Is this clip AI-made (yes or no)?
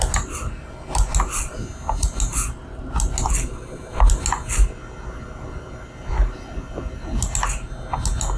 no